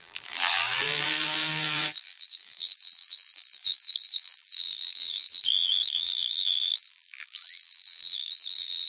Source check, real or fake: fake